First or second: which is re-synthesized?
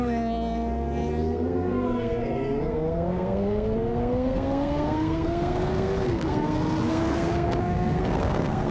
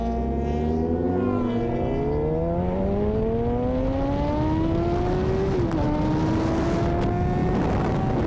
first